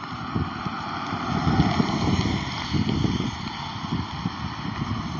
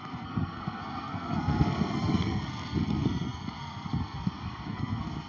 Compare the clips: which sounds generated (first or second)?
second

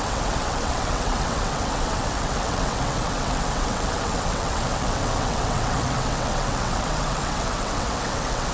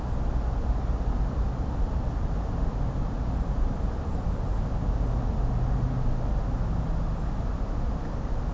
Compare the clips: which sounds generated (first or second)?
first